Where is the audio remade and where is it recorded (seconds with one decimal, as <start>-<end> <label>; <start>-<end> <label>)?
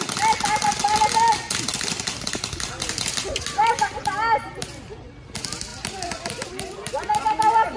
0.0-7.8 recorded